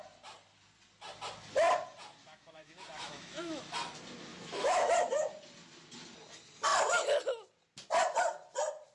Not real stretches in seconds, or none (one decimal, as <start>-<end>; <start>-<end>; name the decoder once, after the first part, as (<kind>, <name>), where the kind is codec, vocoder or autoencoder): 2.2-3.6 (autoencoder, DAC-VAE); 4.3-4.9